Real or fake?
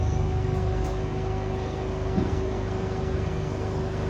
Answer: fake